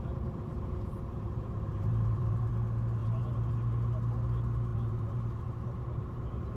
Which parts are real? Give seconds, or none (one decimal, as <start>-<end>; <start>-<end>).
0.0-0.5; 2.5-3.0; 3.5-4.7